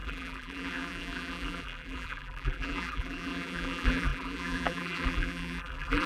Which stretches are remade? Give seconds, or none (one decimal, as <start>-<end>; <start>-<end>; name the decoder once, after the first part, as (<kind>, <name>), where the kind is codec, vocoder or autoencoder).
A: 0.0-6.1 (vocoder, BigVGAN v2)